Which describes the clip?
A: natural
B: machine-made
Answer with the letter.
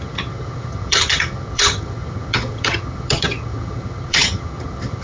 B